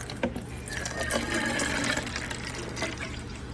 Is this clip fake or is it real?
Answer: real